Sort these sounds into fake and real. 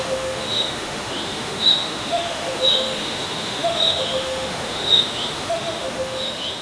fake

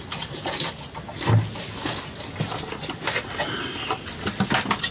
real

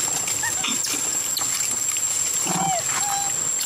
real